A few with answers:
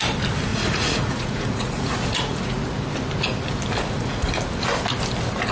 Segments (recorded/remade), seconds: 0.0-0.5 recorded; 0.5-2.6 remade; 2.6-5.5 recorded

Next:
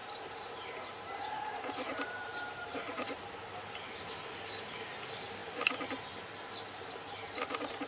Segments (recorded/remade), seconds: 0.0-3.2 remade; 3.2-7.9 recorded

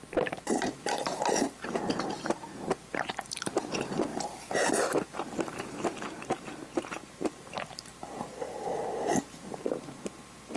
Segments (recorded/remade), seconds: 0.0-8.3 remade; 8.3-8.9 recorded; 8.9-10.6 remade

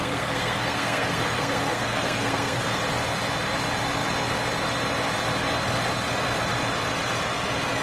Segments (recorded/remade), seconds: 0.0-2.8 remade; 2.8-7.8 recorded

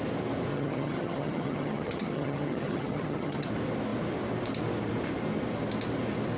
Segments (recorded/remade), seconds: 0.0-0.5 recorded; 0.5-3.5 remade; 3.5-6.4 recorded

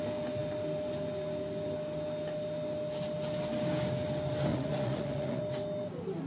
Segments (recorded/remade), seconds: 0.0-4.5 recorded; 4.5-5.4 remade; 5.4-6.3 recorded

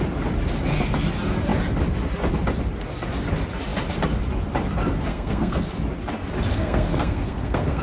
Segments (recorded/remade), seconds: 0.0-5.1 recorded; 5.1-5.7 remade; 5.7-6.5 recorded; 6.5-7.8 remade